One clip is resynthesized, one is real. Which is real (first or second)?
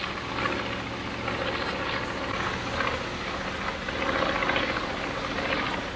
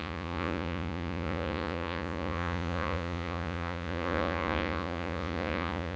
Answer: first